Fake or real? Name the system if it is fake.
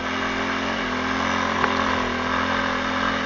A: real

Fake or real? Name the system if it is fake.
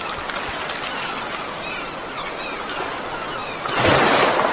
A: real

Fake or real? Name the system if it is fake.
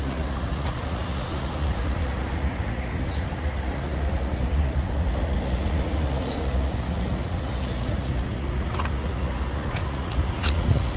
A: fake, vocoder, Vocos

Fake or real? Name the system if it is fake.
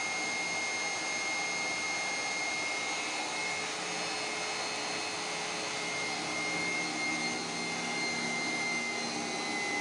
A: real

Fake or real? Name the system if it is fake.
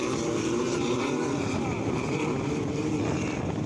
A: real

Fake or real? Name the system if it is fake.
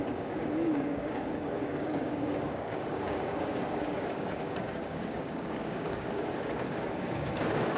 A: fake, codec, DAC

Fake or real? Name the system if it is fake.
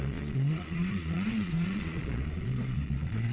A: fake, vocoder, Vocos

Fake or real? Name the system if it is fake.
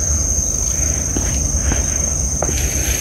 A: real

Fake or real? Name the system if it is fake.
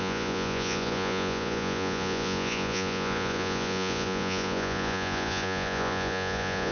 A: fake, vocoder, Vocos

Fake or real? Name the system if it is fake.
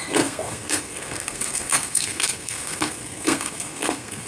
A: fake, codec, SNAC